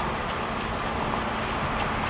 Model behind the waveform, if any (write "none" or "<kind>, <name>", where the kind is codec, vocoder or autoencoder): none